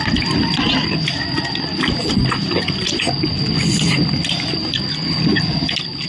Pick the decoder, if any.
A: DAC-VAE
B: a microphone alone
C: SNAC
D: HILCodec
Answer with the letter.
B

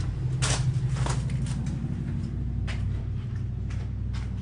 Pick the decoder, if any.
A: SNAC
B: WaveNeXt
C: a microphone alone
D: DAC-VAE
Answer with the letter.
C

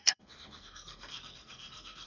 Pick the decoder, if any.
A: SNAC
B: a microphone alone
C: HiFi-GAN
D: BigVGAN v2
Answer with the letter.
A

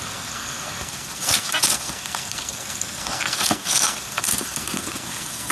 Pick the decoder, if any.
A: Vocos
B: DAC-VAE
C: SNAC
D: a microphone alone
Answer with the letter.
C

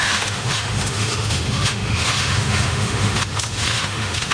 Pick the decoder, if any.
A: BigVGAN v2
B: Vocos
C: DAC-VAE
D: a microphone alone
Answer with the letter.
C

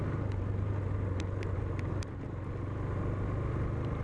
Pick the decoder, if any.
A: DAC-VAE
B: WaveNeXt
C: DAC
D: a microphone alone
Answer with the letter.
D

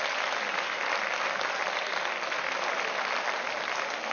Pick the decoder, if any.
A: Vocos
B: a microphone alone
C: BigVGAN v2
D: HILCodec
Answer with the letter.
B